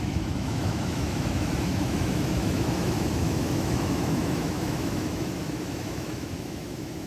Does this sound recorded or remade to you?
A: remade